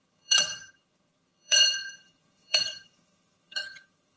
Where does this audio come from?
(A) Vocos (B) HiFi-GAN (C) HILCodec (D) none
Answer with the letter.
B